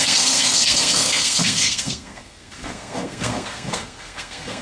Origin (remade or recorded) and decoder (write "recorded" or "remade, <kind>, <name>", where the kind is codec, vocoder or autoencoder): remade, codec, SNAC